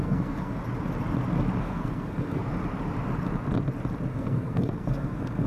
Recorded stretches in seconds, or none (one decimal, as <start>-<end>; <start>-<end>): 0.6-1.6; 2.4-4.1